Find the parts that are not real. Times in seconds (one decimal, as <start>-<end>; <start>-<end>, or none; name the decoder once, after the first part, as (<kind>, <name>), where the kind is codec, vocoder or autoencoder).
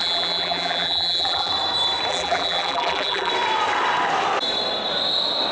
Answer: 0.0-1.5 (vocoder, BigVGAN v2); 2.1-3.3